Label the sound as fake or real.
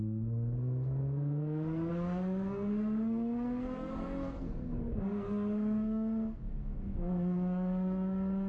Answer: fake